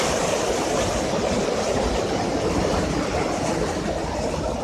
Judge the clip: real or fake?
real